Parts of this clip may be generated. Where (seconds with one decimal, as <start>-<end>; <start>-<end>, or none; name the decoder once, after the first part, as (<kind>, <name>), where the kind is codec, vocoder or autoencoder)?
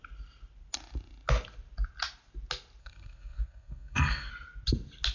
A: 2.8-4.3 (codec, SNAC)